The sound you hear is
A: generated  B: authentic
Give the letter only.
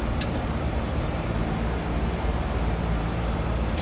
A